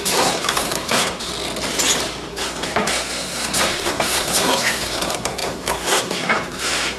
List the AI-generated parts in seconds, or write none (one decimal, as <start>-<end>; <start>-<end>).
0.0-1.3; 2.3-7.0